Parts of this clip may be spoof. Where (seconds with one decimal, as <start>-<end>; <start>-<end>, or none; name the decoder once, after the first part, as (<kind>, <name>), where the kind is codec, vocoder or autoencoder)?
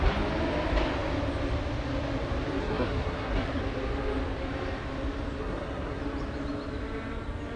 2.6-3.6 (codec, SNAC); 5.4-6.0